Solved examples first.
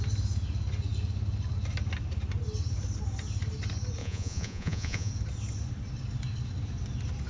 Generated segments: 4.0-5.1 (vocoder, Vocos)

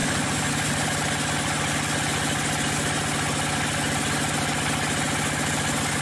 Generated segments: none

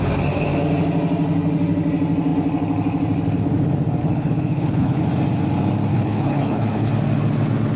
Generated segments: 4.0-5.0 (codec, HILCodec); 5.9-6.9

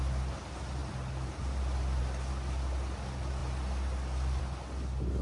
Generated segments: none

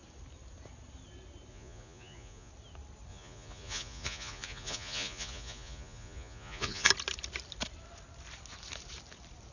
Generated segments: 1.5-2.5 (vocoder, Vocos); 3.1-6.9

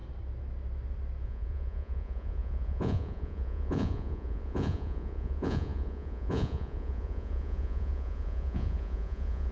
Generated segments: 1.2-9.5 (vocoder, Vocos)

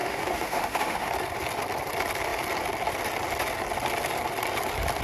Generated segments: 0.0-1.1 (autoencoder, DAC-VAE)

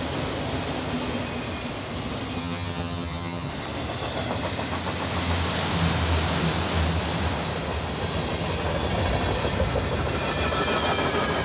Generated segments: 2.4-3.5 (vocoder, HiFi-GAN)